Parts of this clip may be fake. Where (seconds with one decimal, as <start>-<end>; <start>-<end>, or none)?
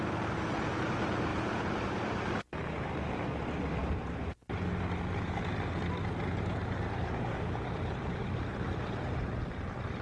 1.3-2.5; 6.6-9.4